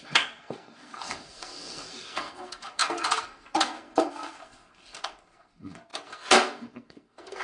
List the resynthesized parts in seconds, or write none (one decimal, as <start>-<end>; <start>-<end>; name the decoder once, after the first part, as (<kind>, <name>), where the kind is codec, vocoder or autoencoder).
0.0-7.4 (codec, SNAC)